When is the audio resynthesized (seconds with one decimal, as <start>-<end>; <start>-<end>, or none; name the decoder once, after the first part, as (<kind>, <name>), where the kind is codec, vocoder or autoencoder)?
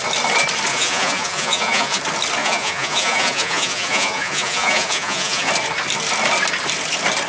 0.7-2.0 (vocoder, Vocos); 2.4-5.5